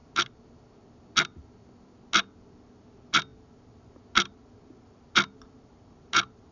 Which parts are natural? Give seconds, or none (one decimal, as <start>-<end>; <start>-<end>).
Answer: 0.0-6.5